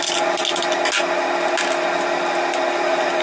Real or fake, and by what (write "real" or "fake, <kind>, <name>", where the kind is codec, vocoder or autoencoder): real